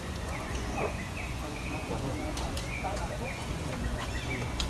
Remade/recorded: remade